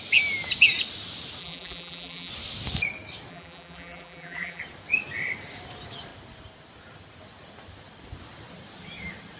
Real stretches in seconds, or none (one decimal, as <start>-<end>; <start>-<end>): 0.0-1.4; 2.3-3.3; 4.6-9.4